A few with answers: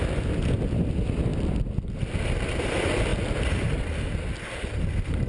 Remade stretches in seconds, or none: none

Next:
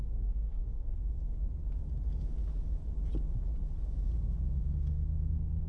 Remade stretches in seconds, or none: 0.0-1.2 (codec, SNAC); 4.6-5.7

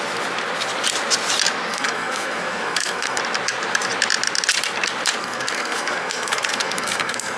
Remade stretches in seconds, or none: 1.7-3.2 (codec, SNAC); 5.2-7.4

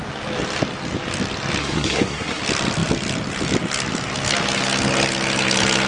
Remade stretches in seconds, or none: 1.6-2.4 (codec, SNAC)